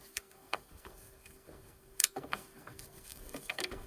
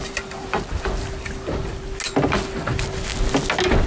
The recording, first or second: second